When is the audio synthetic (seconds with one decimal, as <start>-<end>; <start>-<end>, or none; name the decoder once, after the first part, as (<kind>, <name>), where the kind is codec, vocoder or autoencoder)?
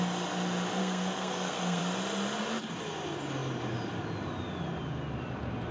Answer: 0.8-1.8 (codec, SNAC)